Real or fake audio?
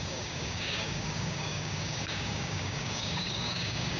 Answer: fake